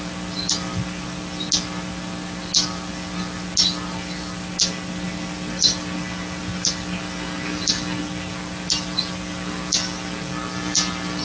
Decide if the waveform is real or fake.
real